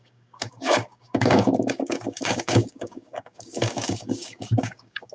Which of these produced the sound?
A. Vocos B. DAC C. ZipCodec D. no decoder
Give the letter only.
B